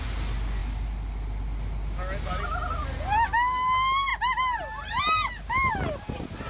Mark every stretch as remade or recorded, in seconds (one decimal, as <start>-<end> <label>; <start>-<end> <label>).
0.0-6.5 recorded